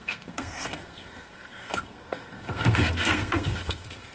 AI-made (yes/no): yes